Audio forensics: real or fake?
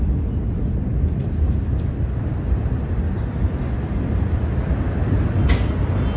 real